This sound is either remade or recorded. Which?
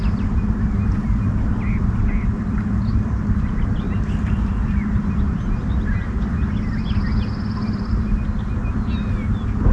recorded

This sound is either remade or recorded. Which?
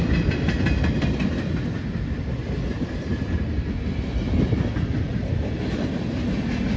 recorded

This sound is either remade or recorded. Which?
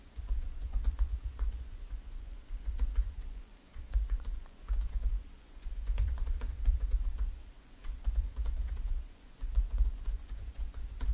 remade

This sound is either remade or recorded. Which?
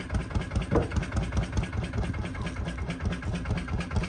recorded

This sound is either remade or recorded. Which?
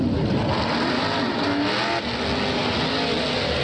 recorded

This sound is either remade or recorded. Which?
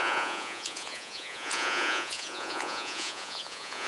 remade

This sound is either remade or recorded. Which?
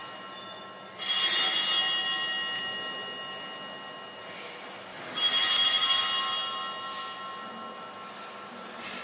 recorded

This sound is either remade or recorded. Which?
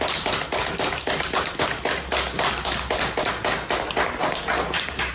recorded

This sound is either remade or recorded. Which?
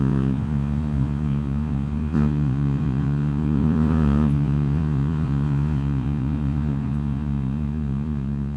remade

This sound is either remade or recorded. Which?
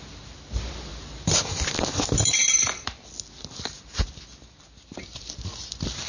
recorded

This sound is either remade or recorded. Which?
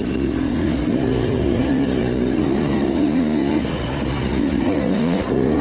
remade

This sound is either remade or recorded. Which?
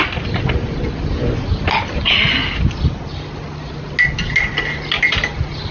recorded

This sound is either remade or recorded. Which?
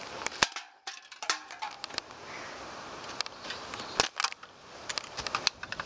recorded